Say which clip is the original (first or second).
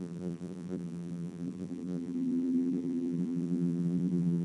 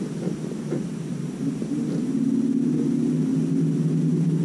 second